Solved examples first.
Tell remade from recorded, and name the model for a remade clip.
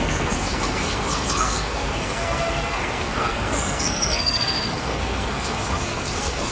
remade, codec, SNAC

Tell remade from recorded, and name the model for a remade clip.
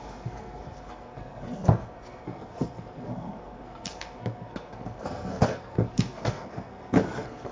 remade, codec, SNAC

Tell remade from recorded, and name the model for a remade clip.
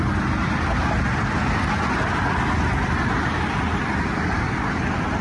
recorded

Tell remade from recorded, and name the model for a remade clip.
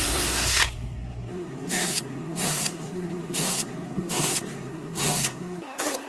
remade, codec, SNAC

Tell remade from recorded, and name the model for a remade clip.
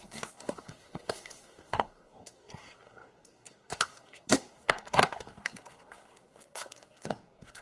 remade, codec, SNAC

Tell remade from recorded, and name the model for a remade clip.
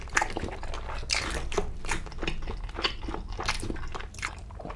recorded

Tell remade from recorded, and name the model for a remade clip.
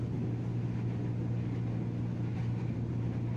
recorded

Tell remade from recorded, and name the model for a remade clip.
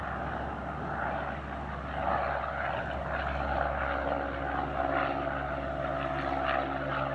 recorded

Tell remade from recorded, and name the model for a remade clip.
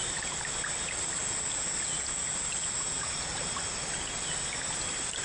recorded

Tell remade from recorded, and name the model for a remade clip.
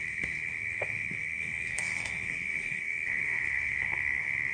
remade, codec, SNAC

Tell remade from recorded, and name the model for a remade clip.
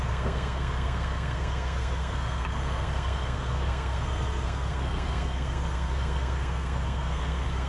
remade, codec, SNAC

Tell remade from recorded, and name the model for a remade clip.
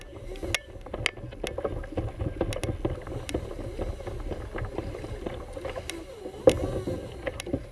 recorded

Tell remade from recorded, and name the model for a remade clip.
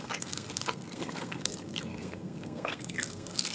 remade, codec, SNAC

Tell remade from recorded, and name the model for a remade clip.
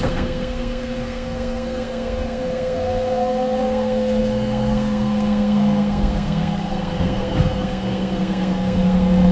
remade, codec, SNAC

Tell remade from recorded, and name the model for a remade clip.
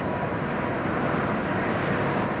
recorded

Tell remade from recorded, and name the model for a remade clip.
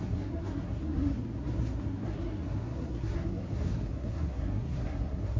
remade, codec, SNAC